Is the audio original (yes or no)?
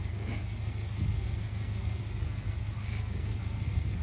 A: no